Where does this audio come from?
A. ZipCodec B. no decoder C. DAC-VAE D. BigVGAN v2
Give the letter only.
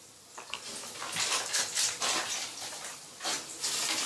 D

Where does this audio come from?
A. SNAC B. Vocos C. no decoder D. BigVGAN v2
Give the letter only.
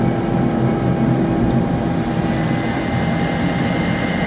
C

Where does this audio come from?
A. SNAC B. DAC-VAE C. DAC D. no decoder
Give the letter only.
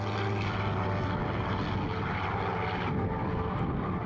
D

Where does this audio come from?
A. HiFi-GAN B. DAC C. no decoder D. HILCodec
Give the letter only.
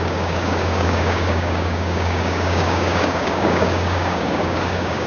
B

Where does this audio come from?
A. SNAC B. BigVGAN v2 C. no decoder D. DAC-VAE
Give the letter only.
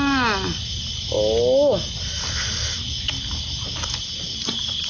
C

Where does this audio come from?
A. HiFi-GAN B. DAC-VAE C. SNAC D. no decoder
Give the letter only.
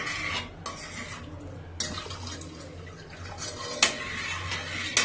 D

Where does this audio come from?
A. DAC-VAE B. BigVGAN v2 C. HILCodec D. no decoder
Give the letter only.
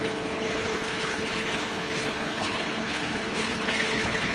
C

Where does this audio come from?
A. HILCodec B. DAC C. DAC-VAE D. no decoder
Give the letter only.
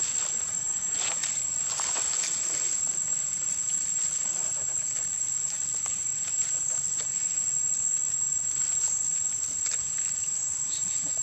D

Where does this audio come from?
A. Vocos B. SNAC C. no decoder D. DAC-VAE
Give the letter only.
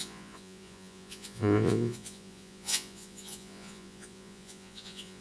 A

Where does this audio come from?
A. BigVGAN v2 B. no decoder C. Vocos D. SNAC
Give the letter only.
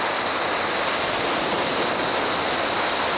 B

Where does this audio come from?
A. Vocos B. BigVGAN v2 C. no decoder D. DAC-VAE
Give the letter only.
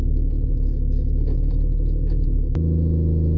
C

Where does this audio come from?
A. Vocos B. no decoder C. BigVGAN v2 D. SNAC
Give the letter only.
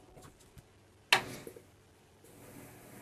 B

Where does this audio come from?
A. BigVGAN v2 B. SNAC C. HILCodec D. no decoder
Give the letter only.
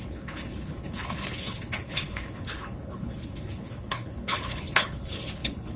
C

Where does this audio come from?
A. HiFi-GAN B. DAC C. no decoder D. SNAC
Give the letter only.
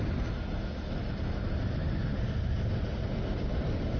C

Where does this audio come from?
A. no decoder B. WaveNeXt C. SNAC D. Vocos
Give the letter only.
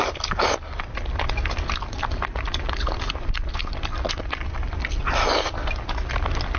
A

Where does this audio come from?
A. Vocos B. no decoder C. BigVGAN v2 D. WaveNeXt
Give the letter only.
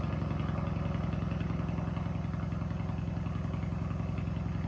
B